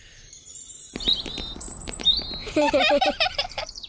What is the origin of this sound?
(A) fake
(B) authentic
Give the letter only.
A